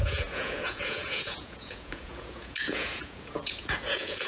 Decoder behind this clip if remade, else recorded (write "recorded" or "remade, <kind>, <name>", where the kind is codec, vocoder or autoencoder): remade, vocoder, Vocos